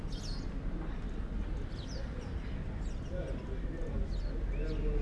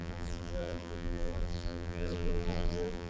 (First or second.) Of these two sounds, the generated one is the second